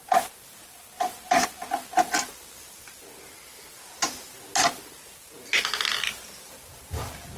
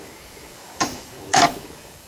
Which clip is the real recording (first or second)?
first